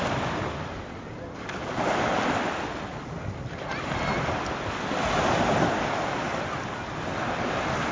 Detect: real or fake real